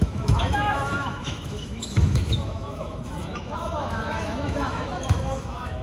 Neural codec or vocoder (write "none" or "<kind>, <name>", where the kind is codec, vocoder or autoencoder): autoencoder, DAC-VAE